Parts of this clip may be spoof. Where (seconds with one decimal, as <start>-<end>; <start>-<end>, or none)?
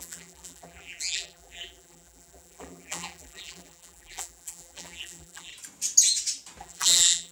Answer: 0.0-5.5; 6.6-7.3